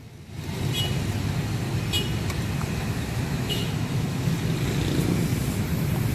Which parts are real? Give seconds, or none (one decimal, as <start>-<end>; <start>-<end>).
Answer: 0.0-2.6; 4.3-6.1